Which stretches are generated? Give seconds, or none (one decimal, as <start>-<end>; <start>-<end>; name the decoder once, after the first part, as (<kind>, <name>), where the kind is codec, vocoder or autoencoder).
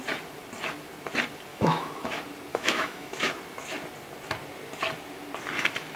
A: 1.5-2.1 (autoencoder, DAC-VAE); 2.5-3.3